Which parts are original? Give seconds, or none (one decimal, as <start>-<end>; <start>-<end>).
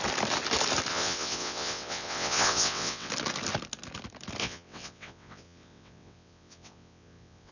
0.0-0.9; 3.1-4.4